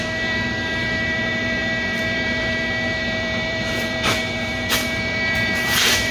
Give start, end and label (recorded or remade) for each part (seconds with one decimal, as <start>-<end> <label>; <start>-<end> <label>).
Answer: 0.0-6.1 remade